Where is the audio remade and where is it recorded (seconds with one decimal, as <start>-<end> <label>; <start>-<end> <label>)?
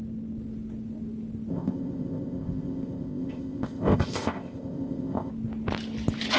0.0-1.5 recorded; 1.5-5.3 remade; 5.3-6.4 recorded